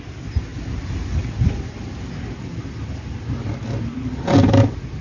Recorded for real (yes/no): yes